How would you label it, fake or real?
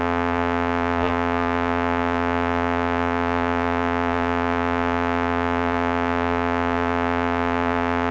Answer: fake